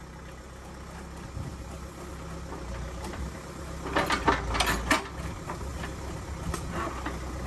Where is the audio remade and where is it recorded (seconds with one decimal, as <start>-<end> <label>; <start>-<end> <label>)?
0.0-7.5 recorded